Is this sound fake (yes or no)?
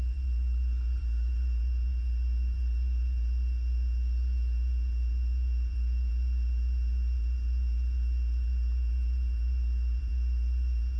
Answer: yes